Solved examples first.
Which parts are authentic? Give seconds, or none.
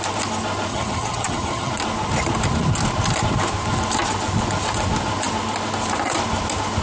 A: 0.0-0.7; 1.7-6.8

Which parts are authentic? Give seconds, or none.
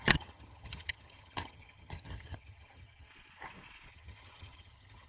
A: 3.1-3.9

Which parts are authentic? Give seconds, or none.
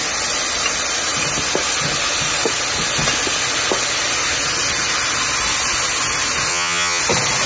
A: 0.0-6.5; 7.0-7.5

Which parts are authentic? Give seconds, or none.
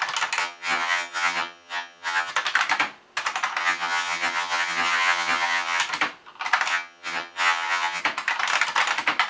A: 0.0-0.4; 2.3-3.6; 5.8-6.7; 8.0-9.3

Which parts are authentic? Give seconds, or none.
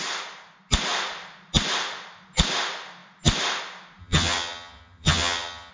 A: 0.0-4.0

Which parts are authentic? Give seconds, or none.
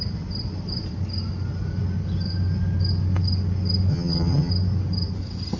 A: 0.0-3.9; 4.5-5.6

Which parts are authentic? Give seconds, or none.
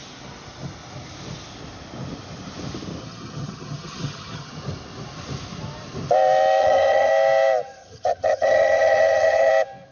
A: 0.0-3.0; 4.5-6.6; 7.1-7.8; 9.5-9.9